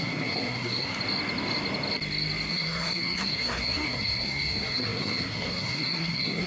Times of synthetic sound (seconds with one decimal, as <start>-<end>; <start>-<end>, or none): 0.0-1.0; 2.5-6.5